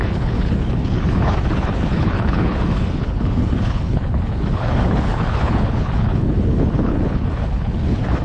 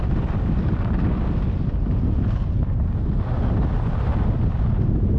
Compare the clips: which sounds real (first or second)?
second